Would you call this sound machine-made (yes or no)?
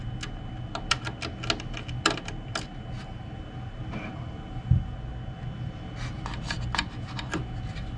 no